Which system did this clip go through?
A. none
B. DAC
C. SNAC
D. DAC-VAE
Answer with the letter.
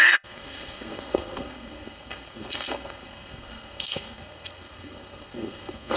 C